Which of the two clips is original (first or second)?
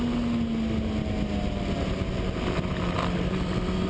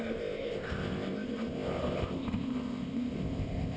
first